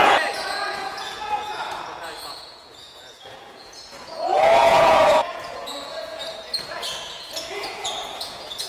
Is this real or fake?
fake